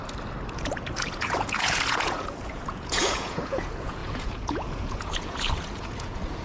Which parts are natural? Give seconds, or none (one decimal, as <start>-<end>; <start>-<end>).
0.0-0.5